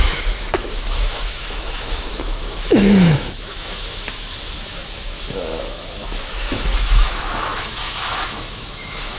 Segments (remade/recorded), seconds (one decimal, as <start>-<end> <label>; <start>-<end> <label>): 0.0-9.2 remade